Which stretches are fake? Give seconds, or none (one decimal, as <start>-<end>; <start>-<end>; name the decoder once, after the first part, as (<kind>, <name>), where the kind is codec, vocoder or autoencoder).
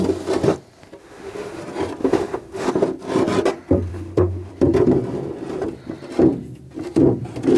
1.0-1.6 (autoencoder, DAC-VAE); 2.0-2.7; 3.9-4.5